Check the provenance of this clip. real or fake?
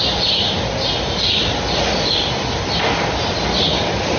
real